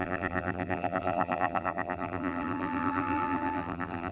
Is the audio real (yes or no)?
no